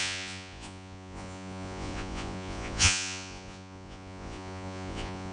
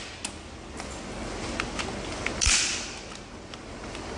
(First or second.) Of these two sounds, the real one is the second